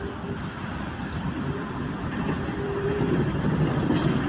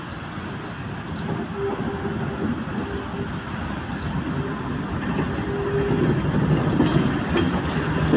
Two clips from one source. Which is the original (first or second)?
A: second